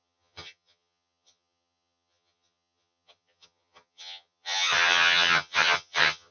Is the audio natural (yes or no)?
no